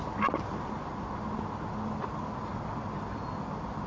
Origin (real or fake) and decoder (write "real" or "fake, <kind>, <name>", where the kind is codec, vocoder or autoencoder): real